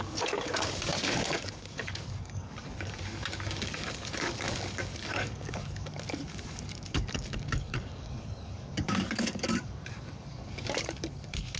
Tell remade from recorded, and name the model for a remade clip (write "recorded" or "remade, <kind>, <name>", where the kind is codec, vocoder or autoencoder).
remade, codec, DAC